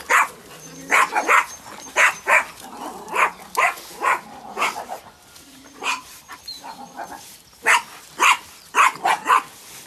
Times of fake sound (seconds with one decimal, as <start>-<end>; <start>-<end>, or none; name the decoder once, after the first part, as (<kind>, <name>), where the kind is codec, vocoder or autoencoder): none